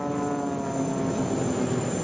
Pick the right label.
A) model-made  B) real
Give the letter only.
B